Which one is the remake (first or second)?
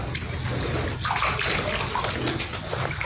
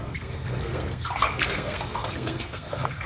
second